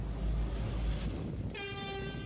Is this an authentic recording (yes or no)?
yes